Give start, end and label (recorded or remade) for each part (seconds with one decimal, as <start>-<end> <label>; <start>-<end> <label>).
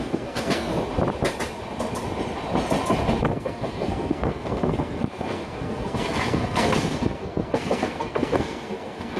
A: 0.0-0.7 remade; 0.7-3.2 recorded; 3.2-9.2 remade